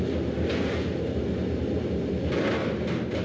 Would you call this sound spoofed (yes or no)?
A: yes